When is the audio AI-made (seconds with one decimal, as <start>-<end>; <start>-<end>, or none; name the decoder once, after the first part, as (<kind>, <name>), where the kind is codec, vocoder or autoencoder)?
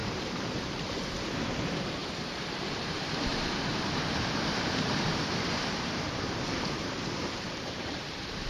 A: 0.0-8.5 (vocoder, BigVGAN v2)